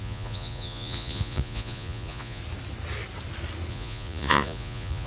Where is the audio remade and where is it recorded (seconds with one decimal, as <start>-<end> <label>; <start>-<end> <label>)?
0.0-2.4 remade; 2.4-3.7 recorded; 3.7-5.1 remade